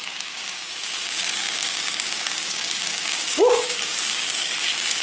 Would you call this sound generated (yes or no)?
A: yes